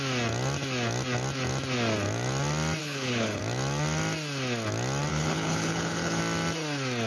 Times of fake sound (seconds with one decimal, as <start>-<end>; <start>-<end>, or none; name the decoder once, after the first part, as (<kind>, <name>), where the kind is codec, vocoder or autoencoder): 2.8-3.4 (codec, HILCodec); 5.1-6.2